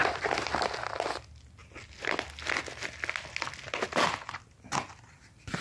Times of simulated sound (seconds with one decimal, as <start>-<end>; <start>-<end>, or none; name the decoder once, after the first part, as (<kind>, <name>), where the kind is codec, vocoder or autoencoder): none